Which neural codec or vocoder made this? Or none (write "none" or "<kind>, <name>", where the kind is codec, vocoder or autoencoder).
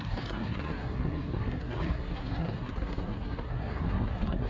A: codec, SNAC